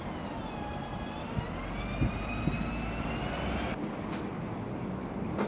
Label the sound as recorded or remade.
recorded